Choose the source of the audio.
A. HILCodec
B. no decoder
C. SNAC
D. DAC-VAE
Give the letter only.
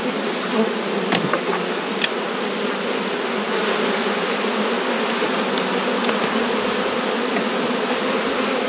B